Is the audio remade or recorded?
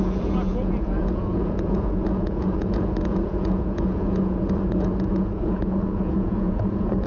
remade